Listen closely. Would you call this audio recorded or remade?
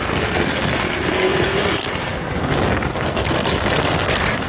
remade